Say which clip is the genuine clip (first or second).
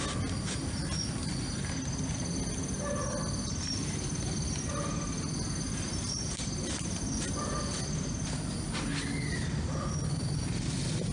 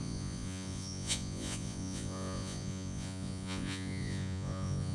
first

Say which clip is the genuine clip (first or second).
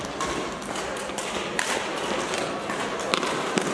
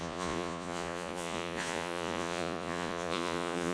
first